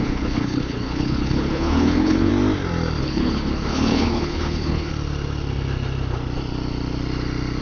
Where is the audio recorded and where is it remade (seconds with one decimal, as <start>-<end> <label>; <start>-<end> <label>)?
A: 0.0-2.3 remade; 2.3-3.0 recorded; 3.0-4.9 remade; 4.9-7.6 recorded